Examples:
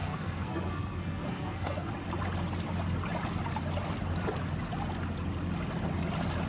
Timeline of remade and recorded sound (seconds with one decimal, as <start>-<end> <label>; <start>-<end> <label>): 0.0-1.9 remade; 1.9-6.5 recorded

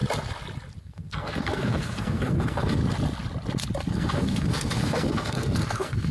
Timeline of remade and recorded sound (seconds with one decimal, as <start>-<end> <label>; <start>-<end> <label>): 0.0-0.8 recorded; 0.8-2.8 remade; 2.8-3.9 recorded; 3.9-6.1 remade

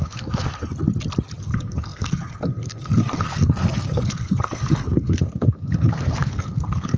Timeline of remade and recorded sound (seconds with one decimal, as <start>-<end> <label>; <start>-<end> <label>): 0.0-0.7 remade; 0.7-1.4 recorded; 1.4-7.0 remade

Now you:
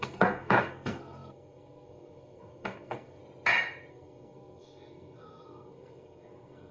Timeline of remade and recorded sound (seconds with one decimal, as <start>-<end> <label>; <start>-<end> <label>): 0.0-3.2 remade; 3.2-3.9 recorded; 3.9-6.7 remade